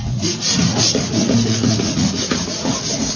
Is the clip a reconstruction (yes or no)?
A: yes